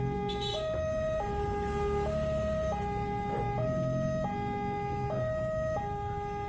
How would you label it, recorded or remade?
recorded